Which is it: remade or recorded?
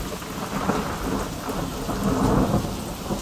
recorded